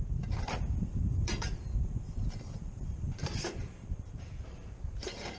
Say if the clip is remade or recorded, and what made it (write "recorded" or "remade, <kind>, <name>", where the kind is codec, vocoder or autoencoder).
remade, vocoder, BigVGAN v2